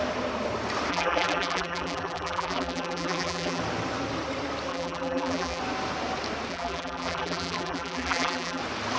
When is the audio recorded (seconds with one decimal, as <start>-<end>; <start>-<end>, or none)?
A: 0.0-0.9; 3.6-4.7; 5.6-6.5; 8.6-9.0